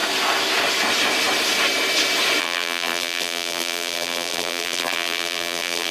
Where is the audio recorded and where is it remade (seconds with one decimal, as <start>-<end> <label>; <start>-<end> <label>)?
0.0-2.4 recorded; 2.4-5.9 remade